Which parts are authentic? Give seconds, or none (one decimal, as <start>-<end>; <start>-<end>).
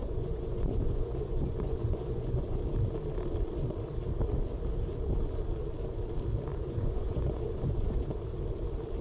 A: 2.6-6.5; 8.0-9.0